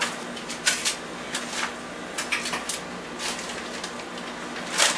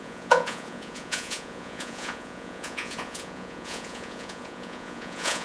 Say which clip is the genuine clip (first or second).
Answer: first